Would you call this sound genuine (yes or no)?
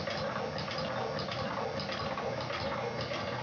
yes